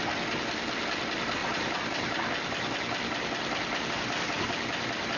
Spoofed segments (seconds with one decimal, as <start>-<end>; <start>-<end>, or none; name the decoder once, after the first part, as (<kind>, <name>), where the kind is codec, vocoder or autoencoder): none